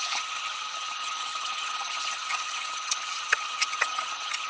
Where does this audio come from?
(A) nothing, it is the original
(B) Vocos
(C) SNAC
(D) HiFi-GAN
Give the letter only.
D